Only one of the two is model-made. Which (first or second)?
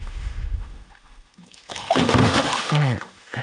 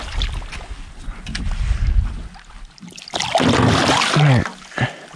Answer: first